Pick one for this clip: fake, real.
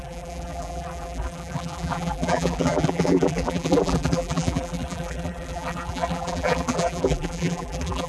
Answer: fake